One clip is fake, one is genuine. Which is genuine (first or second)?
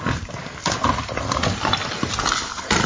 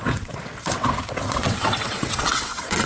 first